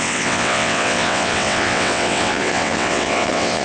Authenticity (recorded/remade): remade